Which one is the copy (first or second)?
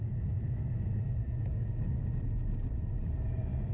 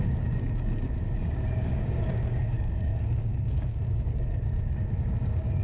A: second